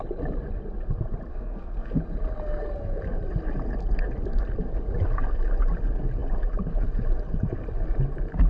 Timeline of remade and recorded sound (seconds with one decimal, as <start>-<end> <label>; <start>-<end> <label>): 0.0-1.3 recorded; 1.3-1.9 remade; 1.9-8.5 recorded